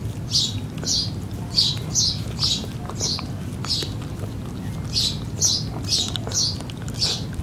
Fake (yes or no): no